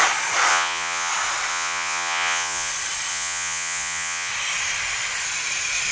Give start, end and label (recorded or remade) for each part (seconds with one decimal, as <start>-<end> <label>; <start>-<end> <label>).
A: 0.0-0.5 recorded; 0.5-1.1 remade; 1.1-1.5 recorded; 1.5-2.7 remade; 2.7-3.1 recorded; 3.1-4.3 remade; 4.3-5.9 recorded